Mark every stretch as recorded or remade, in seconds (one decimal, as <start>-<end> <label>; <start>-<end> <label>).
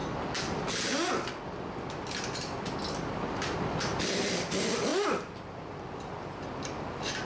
0.0-7.3 recorded